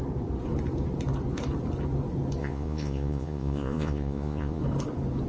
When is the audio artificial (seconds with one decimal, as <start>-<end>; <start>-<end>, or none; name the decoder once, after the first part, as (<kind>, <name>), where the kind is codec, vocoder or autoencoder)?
2.4-4.6 (vocoder, Vocos)